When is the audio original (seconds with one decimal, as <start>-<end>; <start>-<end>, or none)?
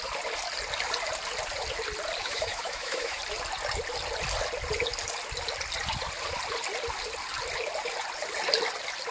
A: 0.0-2.2; 3.2-9.1